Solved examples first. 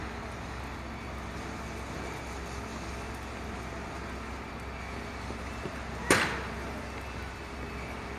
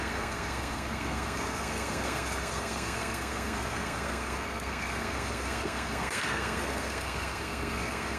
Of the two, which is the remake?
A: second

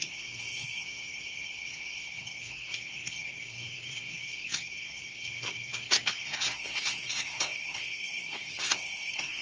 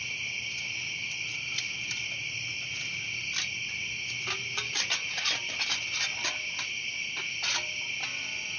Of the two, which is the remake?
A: first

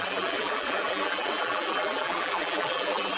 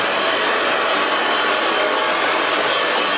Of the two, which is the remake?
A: first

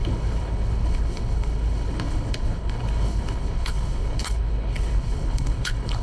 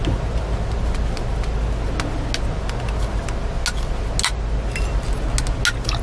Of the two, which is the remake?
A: first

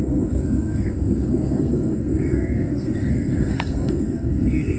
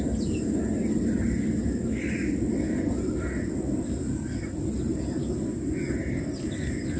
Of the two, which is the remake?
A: first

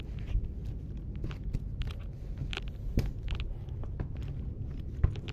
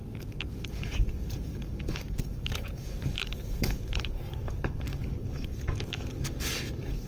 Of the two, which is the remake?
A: second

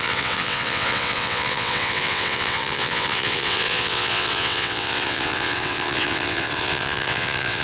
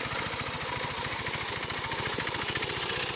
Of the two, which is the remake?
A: first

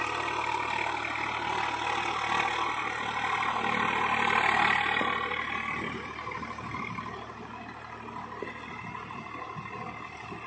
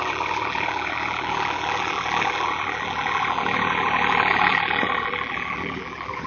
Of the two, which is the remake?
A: second